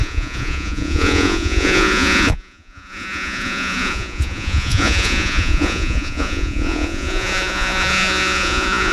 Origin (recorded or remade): remade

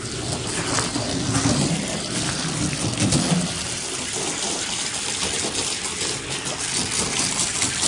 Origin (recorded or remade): recorded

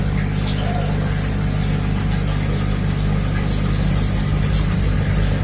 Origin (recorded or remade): recorded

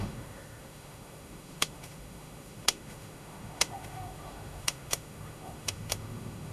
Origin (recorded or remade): remade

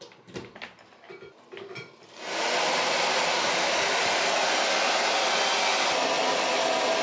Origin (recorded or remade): recorded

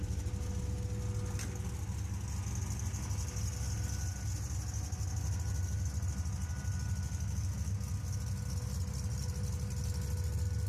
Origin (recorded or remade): recorded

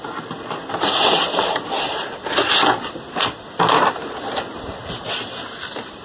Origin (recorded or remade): recorded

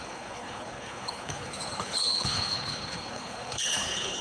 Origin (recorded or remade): remade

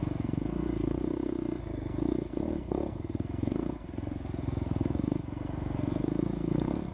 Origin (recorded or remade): remade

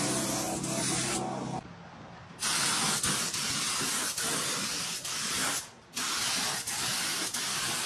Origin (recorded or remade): recorded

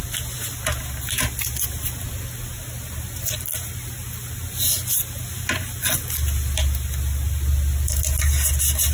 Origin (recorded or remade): recorded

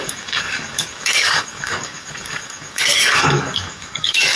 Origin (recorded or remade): remade